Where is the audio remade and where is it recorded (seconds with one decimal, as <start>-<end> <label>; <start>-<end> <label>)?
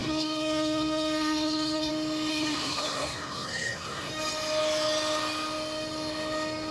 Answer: 0.0-1.9 remade; 1.9-2.3 recorded; 2.3-4.1 remade; 4.1-6.7 recorded